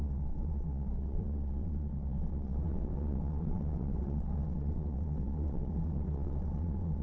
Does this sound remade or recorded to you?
remade